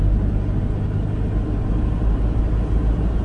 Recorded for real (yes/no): yes